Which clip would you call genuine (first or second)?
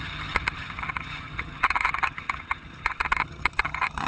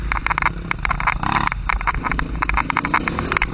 second